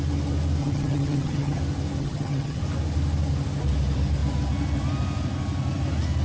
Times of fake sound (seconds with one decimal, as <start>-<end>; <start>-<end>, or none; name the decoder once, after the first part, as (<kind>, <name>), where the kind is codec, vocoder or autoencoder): 0.6-1.6 (vocoder, HiFi-GAN); 2.0-2.6

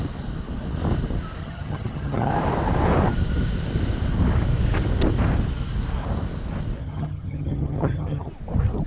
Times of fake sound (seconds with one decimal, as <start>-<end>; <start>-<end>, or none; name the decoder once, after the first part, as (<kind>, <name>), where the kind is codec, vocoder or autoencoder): 1.4-2.3 (vocoder, HiFi-GAN); 6.8-8.3